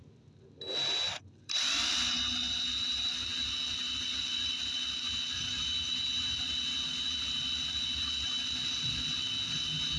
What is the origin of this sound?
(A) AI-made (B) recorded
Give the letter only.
B